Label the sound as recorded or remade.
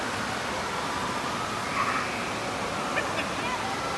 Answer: recorded